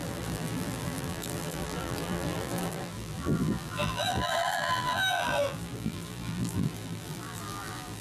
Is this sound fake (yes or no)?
yes